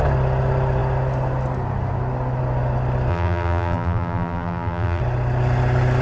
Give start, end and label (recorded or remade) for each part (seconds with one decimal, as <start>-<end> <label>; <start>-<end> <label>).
0.0-3.1 recorded; 3.1-5.0 remade; 5.0-6.0 recorded